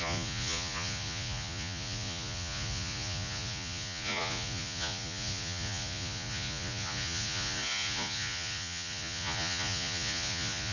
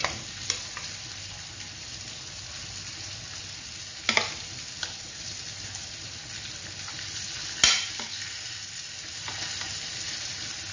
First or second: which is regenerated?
first